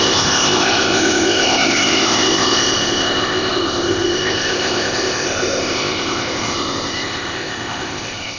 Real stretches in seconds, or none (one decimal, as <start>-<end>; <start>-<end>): none

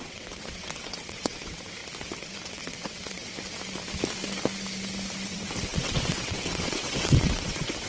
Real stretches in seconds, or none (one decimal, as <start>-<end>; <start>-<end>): 1.8-2.4; 3.3-5.3

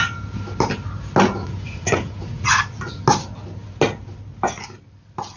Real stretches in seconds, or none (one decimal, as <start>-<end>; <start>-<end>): 0.0-1.4; 2.5-5.4

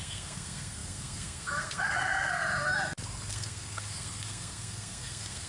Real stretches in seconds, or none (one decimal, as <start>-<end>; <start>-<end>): 2.4-3.3

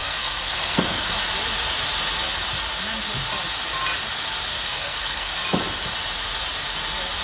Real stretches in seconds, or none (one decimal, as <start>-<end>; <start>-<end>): 1.1-4.5; 5.4-7.2

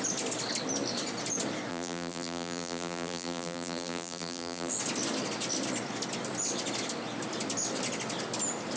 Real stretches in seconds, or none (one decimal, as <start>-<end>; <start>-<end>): 0.0-1.7; 4.7-8.8

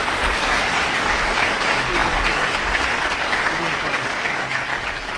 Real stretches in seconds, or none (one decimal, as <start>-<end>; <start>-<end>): 4.7-5.2